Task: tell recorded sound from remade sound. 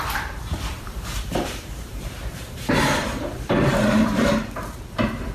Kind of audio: remade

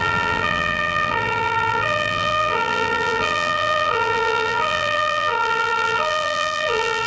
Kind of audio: remade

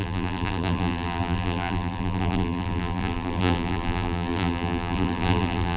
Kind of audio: remade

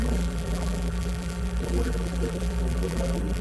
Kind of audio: remade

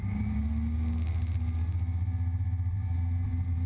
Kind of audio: recorded